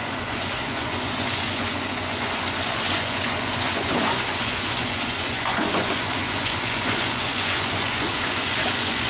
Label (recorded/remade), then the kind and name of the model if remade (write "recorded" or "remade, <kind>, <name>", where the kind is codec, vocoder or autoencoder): remade, vocoder, Vocos